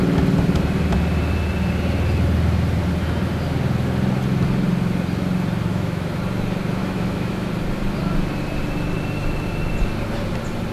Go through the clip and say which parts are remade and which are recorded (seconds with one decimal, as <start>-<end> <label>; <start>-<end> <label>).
0.0-5.7 recorded; 5.7-6.2 remade; 6.2-6.8 recorded; 6.8-7.5 remade; 7.5-10.7 recorded